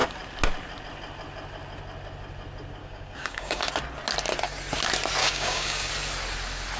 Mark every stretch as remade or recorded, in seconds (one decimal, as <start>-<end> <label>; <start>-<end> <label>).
0.0-2.8 recorded; 2.8-3.6 remade; 3.6-5.2 recorded; 5.2-5.9 remade; 5.9-6.8 recorded